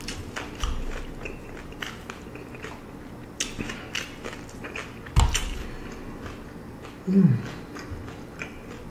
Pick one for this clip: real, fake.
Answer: real